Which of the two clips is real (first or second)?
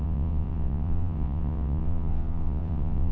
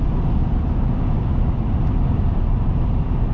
second